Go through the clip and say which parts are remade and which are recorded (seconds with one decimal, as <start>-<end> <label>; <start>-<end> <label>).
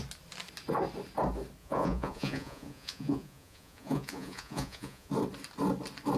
0.0-1.6 recorded; 1.6-5.1 remade; 5.1-6.2 recorded